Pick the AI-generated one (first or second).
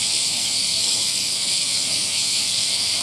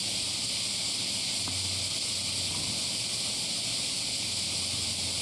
first